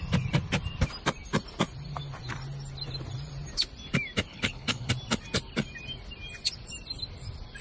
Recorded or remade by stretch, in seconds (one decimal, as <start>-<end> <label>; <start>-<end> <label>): 0.0-4.3 recorded; 4.3-4.9 remade; 4.9-7.6 recorded